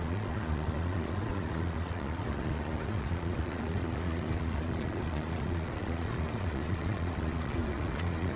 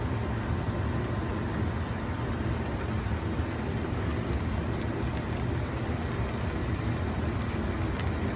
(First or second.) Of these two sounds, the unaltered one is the second